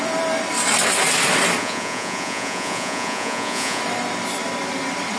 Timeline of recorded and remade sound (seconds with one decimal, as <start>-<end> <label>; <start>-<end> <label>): 0.0-1.6 recorded; 1.6-3.8 remade; 3.8-5.2 recorded